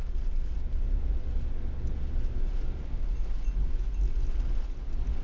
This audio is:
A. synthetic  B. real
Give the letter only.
B